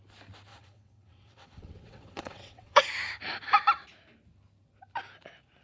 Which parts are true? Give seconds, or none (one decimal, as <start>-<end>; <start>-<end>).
0.0-0.5; 2.8-5.6